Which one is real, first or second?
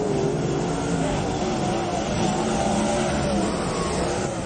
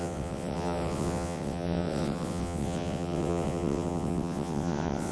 first